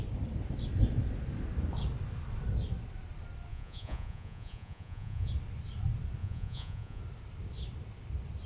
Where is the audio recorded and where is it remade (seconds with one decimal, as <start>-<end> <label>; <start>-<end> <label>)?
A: 0.0-3.5 recorded; 3.5-5.3 remade; 5.3-6.2 recorded; 6.2-7.0 remade; 7.0-8.5 recorded